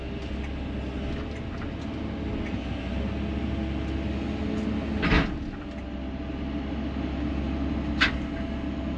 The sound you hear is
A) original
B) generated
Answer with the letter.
A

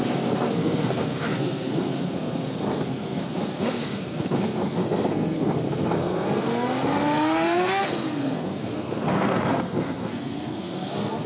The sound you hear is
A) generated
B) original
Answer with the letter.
A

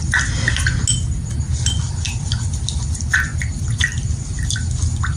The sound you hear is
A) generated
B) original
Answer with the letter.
B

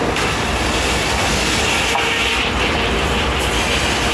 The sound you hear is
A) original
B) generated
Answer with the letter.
A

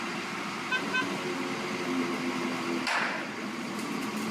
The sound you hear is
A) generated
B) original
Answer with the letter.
B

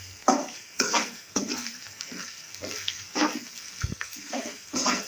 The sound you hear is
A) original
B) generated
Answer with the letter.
B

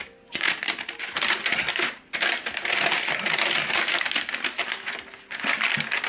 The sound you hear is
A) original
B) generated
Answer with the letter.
A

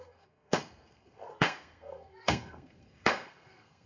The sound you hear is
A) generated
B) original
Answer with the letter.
A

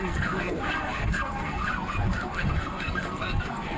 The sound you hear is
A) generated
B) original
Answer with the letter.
A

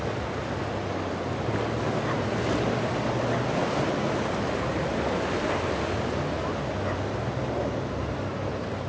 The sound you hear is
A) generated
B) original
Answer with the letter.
B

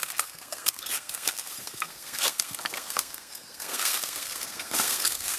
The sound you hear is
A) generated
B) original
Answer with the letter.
A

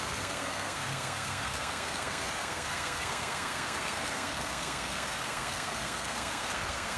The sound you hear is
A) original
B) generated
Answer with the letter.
B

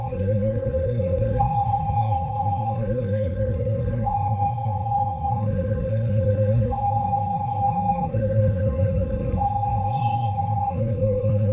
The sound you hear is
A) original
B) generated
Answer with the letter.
B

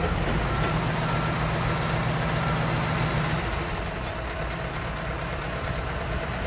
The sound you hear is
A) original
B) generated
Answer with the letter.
A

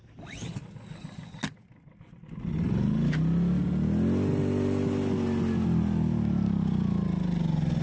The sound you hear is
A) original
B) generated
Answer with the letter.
A